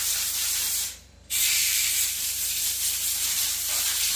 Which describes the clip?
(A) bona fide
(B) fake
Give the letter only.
B